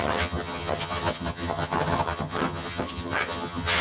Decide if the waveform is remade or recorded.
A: remade